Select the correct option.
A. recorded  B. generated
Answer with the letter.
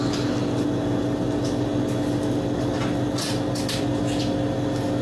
A